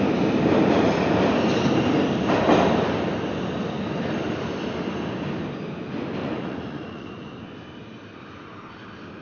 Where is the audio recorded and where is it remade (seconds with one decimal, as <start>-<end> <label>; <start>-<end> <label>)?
0.0-6.2 recorded; 6.2-7.4 remade; 7.4-9.2 recorded